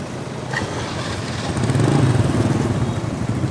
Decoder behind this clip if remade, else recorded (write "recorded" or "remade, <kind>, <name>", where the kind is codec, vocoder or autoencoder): recorded